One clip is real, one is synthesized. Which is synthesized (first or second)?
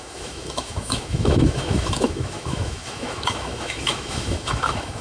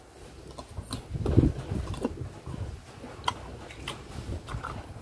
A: first